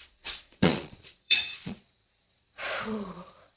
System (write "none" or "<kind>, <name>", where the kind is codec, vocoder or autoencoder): vocoder, Vocos